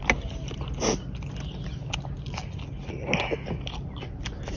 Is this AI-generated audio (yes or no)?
no